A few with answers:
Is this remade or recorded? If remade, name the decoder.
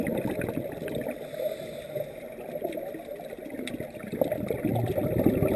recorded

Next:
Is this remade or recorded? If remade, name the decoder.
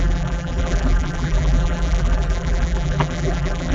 remade, vocoder, BigVGAN v2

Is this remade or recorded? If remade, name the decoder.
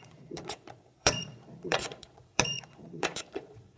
remade, vocoder, Vocos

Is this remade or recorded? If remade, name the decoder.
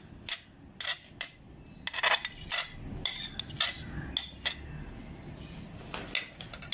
recorded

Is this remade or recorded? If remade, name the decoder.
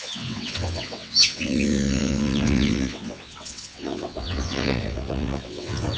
remade, vocoder, WaveNeXt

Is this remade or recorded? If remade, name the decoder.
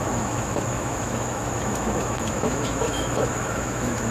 remade, autoencoder, DAC-VAE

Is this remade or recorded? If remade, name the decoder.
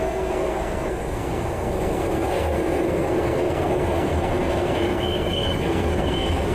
remade, codec, SNAC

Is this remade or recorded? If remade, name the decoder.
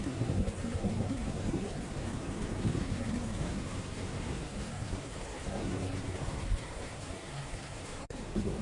remade, codec, SNAC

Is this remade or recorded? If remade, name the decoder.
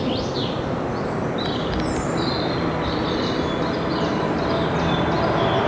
recorded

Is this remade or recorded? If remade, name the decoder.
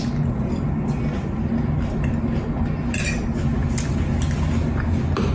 recorded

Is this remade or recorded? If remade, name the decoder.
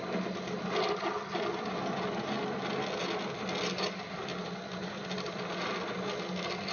recorded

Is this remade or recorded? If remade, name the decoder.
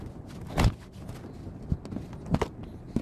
recorded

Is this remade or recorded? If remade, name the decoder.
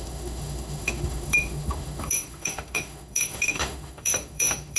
remade, autoencoder, DAC-VAE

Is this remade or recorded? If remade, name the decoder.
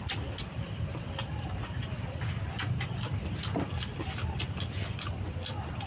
recorded